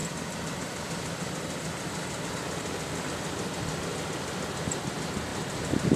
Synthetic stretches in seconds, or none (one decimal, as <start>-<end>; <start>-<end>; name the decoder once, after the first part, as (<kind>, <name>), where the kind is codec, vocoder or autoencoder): 0.0-2.3 (vocoder, BigVGAN v2); 5.3-6.0